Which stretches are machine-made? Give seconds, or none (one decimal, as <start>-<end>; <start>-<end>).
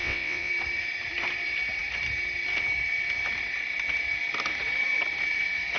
0.0-0.5